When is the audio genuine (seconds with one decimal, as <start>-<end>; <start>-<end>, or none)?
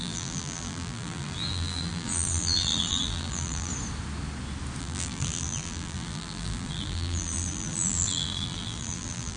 3.7-4.8